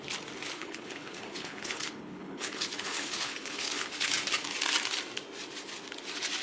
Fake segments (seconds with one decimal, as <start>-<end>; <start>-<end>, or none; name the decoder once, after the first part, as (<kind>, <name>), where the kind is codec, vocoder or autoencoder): 0.5-4.1 (codec, HILCodec)